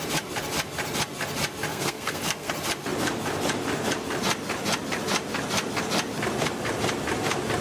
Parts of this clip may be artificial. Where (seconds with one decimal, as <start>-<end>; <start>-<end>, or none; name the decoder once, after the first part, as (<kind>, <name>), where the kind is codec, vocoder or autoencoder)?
1.7-2.5 (codec, SNAC)